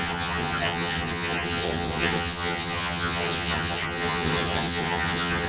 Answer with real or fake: fake